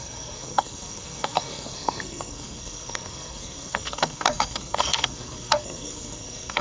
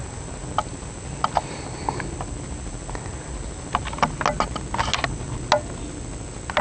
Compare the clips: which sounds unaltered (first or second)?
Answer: second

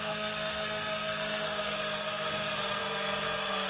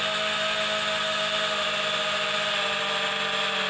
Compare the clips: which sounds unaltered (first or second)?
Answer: second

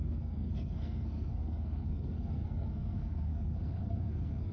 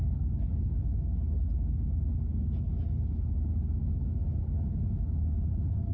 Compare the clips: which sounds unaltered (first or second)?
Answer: second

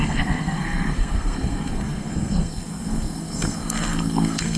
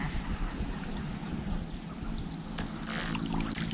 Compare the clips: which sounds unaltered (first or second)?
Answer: second